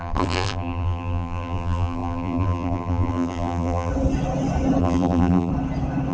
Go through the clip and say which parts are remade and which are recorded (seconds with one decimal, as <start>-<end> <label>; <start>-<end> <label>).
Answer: 0.0-3.9 remade; 3.9-4.8 recorded; 4.8-5.5 remade; 5.5-6.1 recorded